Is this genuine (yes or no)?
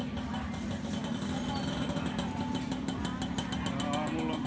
yes